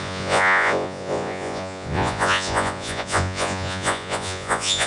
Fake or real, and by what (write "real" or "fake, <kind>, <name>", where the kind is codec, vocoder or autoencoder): fake, vocoder, Vocos